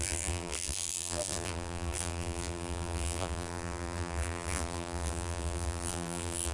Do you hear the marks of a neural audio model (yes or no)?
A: yes